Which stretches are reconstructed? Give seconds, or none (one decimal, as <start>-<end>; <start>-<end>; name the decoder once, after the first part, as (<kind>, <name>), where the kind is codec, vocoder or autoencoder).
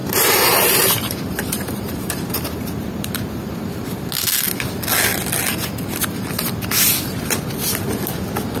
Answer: 0.0-4.1 (vocoder, BigVGAN v2)